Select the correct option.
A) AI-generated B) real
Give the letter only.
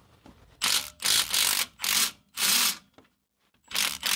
B